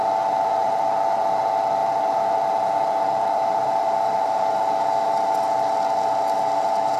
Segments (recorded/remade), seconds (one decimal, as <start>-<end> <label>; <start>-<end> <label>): 0.0-0.6 recorded; 0.6-1.4 remade; 1.4-1.8 recorded; 1.8-5.3 remade; 5.3-7.0 recorded